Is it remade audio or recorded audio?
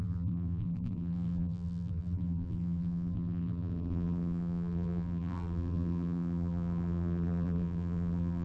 remade